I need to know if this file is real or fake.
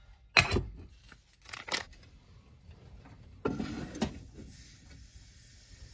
real